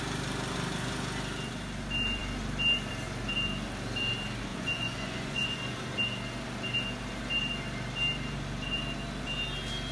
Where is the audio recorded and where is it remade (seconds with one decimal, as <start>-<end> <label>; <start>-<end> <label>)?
0.0-4.5 recorded; 4.5-5.8 remade; 5.8-9.9 recorded

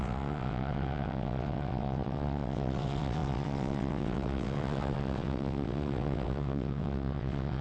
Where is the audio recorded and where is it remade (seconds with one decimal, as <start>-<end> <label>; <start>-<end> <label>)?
0.0-7.6 remade

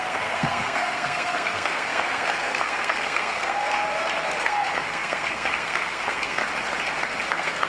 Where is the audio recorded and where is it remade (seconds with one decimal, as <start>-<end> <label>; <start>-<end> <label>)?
0.0-3.8 remade; 3.8-4.4 recorded; 4.4-6.4 remade; 6.4-7.3 recorded; 7.3-7.7 remade

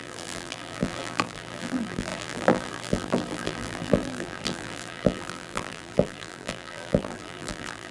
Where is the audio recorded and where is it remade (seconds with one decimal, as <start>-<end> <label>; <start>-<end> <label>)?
0.0-7.9 remade

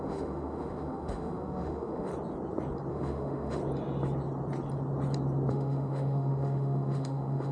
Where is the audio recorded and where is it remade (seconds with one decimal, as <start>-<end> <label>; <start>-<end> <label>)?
0.0-2.1 remade; 2.1-2.9 recorded; 2.9-3.6 remade; 3.6-5.5 recorded; 5.5-7.5 remade